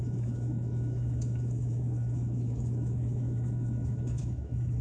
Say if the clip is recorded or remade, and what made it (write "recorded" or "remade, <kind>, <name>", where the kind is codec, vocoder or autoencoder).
remade, autoencoder, DAC-VAE